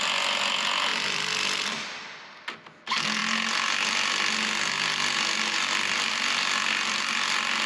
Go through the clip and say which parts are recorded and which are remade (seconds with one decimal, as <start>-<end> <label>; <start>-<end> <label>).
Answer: 0.0-7.7 recorded